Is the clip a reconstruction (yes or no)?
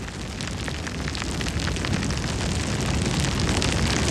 no